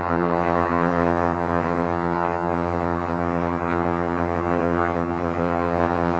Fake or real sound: fake